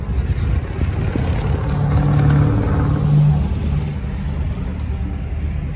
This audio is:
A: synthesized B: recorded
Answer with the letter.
B